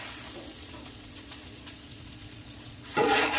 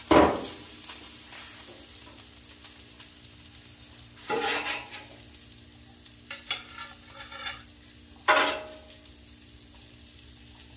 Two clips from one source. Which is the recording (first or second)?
second